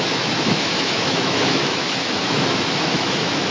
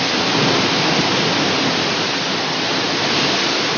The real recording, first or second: second